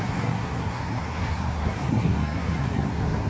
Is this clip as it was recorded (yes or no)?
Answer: no